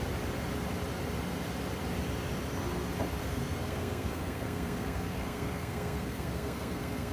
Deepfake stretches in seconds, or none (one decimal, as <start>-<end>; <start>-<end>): 3.2-7.1